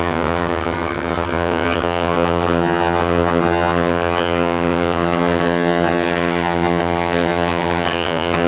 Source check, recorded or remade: remade